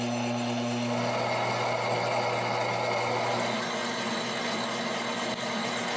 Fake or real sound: real